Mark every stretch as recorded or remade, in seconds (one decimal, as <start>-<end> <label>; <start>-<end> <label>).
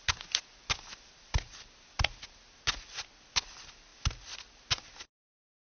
0.0-5.6 recorded